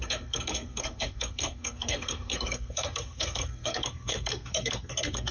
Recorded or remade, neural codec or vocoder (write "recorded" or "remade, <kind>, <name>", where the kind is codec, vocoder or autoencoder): remade, codec, SNAC